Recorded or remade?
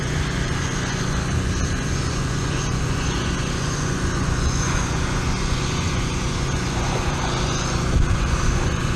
remade